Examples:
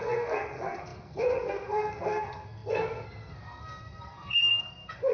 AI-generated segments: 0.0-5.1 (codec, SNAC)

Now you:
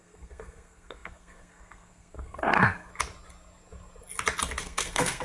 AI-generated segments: 0.0-2.9 (codec, SNAC); 4.6-5.2

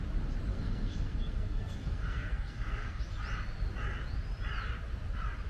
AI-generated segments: 0.5-3.0 (codec, SNAC)